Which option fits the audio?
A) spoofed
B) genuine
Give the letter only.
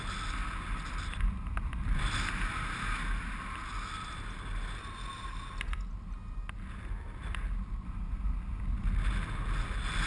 B